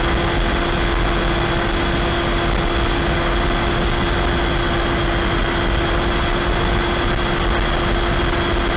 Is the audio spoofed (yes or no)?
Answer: no